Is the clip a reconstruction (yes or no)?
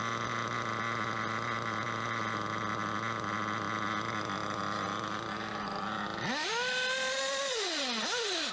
no